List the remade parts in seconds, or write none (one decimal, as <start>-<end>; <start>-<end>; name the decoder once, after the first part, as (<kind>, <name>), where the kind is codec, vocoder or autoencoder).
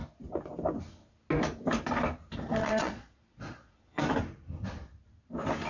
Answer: 2.6-4.0 (vocoder, Vocos)